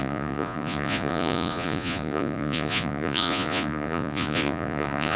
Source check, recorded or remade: remade